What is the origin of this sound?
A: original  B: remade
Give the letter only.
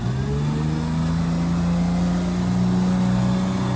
A